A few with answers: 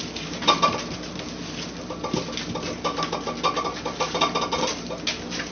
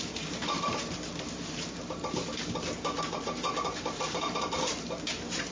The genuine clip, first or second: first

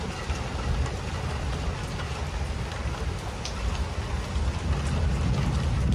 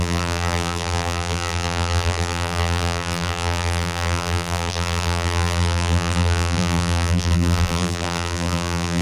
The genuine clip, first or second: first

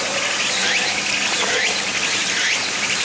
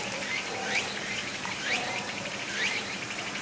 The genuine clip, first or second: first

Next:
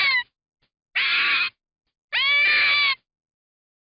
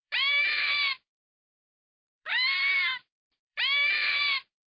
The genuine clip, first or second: first